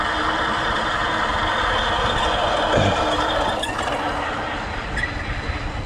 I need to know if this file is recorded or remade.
recorded